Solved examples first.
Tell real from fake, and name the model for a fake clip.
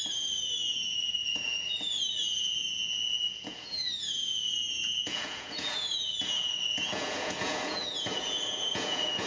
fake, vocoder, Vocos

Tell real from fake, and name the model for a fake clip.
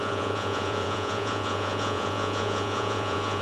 fake, vocoder, Vocos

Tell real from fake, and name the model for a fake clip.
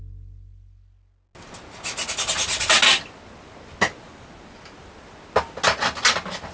real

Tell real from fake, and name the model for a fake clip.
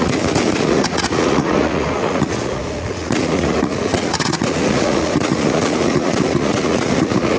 fake, vocoder, Vocos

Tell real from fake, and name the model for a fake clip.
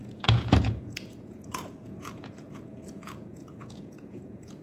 fake, vocoder, Vocos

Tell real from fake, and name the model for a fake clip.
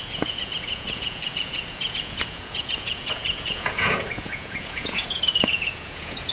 fake, vocoder, Vocos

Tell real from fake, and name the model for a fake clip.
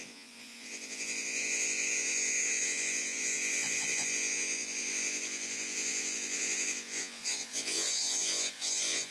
fake, vocoder, Vocos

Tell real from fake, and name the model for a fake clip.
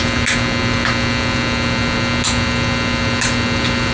real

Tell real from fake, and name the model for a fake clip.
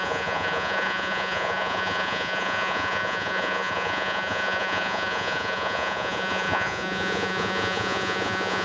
fake, vocoder, Vocos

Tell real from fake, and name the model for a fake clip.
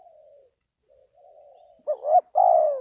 real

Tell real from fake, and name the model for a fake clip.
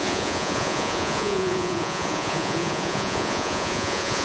fake, vocoder, Vocos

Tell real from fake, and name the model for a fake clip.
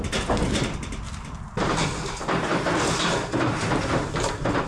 real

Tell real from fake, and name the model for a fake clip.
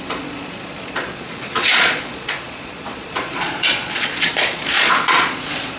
fake, vocoder, Vocos